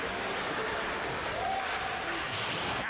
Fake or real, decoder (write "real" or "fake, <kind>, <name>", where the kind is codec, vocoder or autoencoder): real